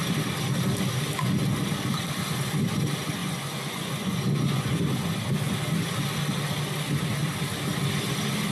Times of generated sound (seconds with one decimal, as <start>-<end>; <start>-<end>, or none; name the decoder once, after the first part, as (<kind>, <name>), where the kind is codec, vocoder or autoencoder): 3.2-4.7 (vocoder, Vocos)